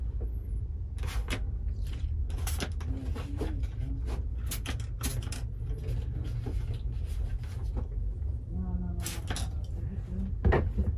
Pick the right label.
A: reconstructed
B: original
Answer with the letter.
B